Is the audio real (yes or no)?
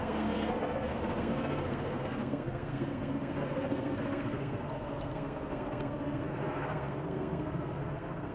no